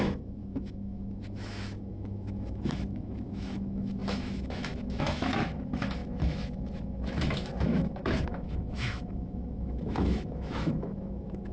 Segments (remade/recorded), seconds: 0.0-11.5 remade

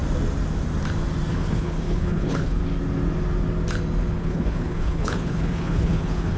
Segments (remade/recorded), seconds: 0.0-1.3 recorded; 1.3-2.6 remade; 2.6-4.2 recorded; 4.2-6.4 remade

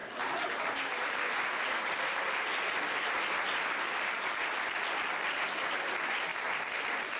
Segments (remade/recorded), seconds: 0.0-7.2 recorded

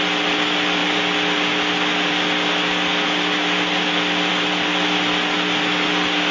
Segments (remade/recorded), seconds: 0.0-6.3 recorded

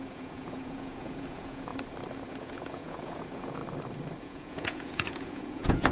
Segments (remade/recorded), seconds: 0.0-1.7 remade; 1.7-2.3 recorded; 2.3-3.6 remade; 3.6-4.2 recorded; 4.2-5.9 remade

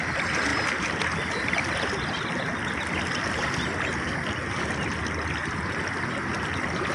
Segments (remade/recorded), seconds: 0.0-6.9 recorded

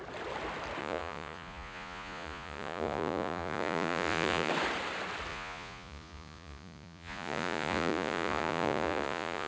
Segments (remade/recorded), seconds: 0.0-0.8 recorded; 0.8-4.5 remade; 4.5-5.3 recorded; 5.3-9.5 remade